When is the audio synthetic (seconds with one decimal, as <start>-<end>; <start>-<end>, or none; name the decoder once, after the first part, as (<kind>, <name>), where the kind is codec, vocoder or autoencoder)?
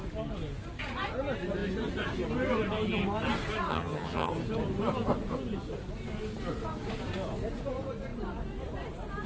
3.7-4.3 (vocoder, HiFi-GAN)